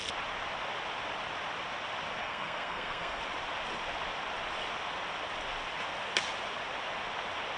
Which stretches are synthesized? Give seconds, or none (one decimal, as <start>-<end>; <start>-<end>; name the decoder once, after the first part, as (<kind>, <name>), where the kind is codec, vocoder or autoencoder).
2.2-3.2 (codec, SNAC)